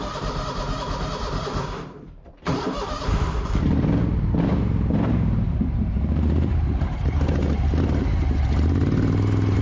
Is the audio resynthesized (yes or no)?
yes